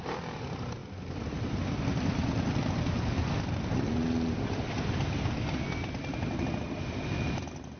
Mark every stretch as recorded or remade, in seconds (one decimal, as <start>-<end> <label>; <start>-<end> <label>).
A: 0.0-7.8 recorded